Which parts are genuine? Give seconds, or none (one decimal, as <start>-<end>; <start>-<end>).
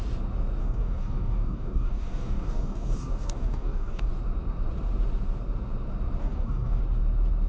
0.0-0.6; 4.1-6.2; 6.8-7.5